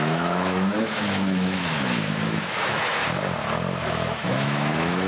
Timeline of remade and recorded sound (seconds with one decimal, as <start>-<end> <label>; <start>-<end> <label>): 0.0-3.0 remade; 3.0-3.8 recorded; 3.8-5.1 remade